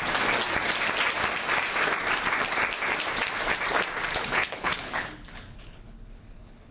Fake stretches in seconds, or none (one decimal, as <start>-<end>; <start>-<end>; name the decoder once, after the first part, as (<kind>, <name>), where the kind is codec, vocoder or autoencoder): 4.1-6.7 (codec, HILCodec)